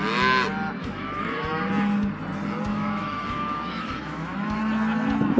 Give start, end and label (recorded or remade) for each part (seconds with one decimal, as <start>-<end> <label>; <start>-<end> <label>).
0.0-0.8 recorded; 0.8-1.7 remade; 1.7-2.7 recorded; 2.7-4.6 remade; 4.6-5.4 recorded